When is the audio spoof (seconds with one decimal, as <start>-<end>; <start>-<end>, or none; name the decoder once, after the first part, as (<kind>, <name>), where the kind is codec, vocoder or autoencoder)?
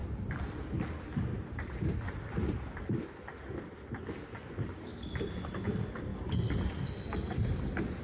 none